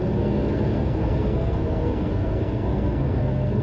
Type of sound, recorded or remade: remade